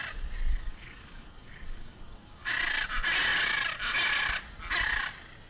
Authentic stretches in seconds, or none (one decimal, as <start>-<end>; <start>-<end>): 0.0-0.5; 2.5-5.5